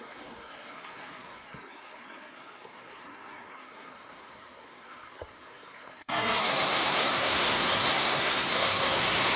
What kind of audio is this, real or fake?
fake